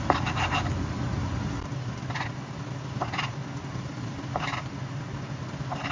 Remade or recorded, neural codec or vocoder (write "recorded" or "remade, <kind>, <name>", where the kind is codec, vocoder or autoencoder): recorded